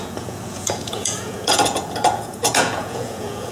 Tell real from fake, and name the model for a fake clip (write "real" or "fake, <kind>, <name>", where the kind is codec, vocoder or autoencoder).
fake, vocoder, Vocos